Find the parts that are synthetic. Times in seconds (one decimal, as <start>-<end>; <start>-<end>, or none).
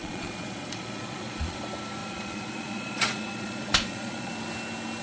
0.0-1.6; 2.0-4.3